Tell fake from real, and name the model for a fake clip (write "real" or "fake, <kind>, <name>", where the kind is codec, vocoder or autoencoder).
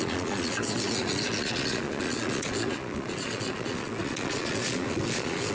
fake, vocoder, Vocos